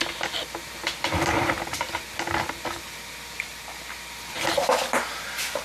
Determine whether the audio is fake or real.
real